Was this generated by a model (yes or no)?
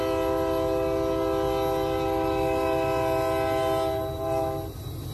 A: no